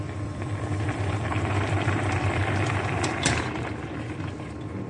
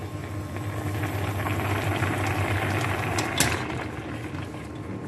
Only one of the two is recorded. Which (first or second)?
second